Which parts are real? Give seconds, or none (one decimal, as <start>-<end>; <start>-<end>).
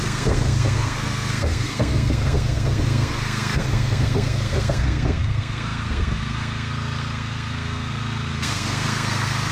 none